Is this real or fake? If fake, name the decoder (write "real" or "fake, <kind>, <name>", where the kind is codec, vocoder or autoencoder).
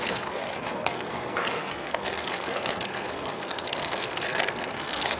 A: fake, codec, SNAC